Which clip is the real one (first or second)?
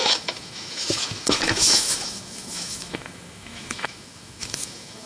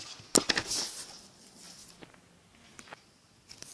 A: second